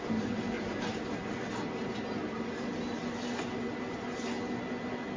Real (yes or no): yes